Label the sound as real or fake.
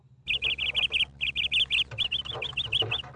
real